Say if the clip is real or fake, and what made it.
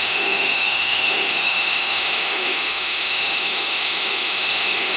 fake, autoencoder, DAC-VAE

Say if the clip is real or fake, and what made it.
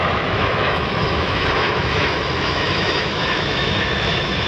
fake, autoencoder, DAC-VAE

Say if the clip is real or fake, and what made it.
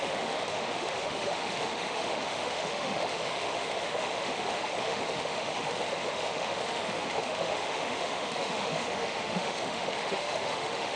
fake, autoencoder, DAC-VAE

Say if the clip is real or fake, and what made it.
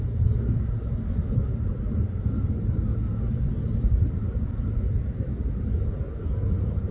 real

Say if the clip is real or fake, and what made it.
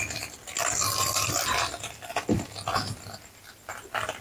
real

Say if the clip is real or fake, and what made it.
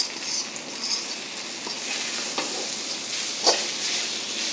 real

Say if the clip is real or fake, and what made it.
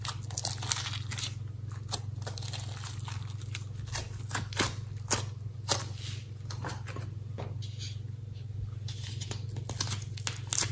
real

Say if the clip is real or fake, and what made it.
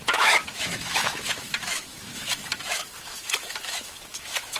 fake, autoencoder, DAC-VAE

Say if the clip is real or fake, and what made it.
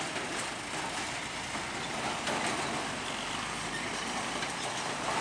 real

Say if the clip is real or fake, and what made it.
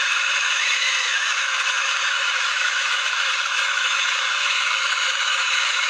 fake, autoencoder, DAC-VAE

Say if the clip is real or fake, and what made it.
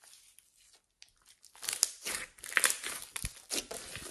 real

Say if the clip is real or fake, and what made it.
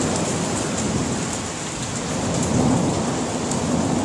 real